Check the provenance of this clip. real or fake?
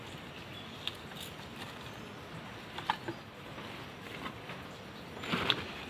real